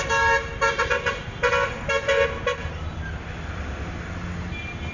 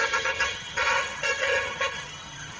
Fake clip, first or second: second